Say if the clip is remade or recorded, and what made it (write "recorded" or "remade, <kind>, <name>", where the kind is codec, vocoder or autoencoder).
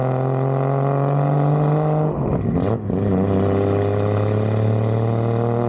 recorded